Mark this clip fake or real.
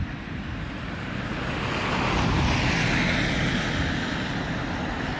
real